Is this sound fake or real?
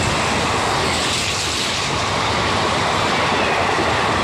real